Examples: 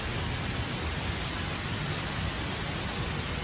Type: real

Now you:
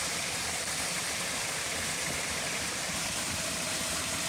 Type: fake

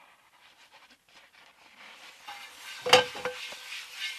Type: real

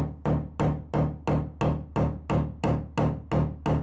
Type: real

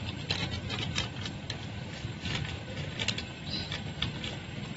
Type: real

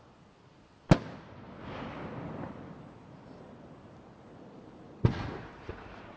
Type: real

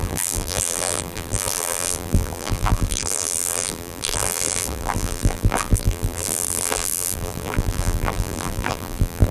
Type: fake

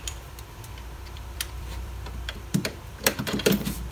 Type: fake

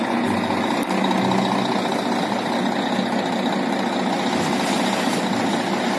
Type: real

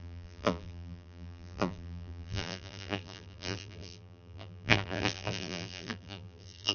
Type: fake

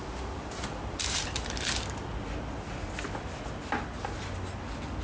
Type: real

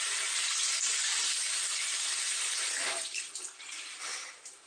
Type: fake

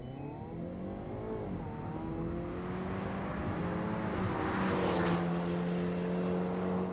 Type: real